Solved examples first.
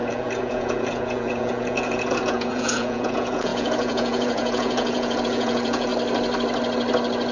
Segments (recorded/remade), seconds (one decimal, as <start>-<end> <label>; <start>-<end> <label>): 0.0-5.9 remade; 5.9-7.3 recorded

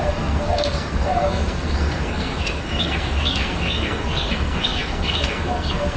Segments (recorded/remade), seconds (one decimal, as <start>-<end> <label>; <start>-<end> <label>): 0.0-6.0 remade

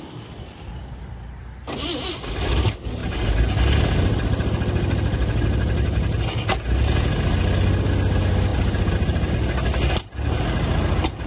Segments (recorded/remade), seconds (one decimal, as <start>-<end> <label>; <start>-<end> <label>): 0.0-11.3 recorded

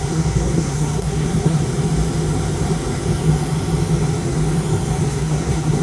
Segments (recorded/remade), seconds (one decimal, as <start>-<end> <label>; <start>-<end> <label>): 0.0-1.6 remade; 1.6-5.1 recorded; 5.1-5.8 remade

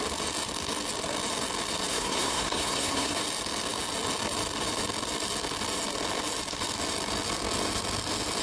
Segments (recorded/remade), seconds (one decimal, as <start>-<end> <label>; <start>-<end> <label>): 0.0-1.9 recorded; 1.9-3.2 remade; 3.2-8.4 recorded

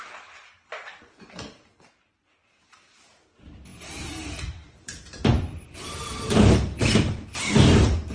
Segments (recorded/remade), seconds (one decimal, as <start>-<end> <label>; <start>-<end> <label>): 0.0-8.1 remade